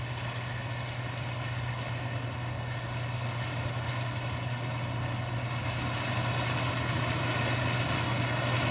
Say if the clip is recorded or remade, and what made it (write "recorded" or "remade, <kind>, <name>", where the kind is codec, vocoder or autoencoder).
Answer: recorded